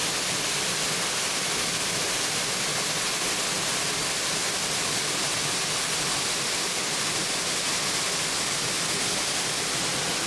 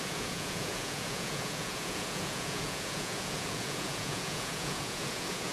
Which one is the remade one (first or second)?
second